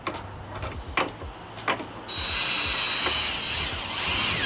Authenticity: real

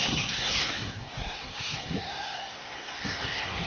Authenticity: fake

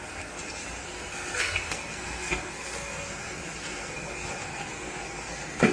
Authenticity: fake